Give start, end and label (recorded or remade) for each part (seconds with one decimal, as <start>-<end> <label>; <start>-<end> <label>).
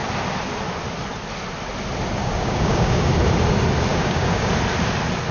0.0-2.2 recorded; 2.2-3.1 remade; 3.1-3.9 recorded; 3.9-4.5 remade; 4.5-5.3 recorded